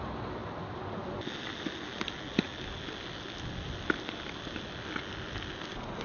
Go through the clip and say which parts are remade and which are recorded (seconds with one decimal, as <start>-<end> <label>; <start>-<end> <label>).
0.0-6.0 recorded